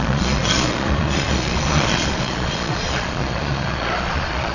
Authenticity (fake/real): fake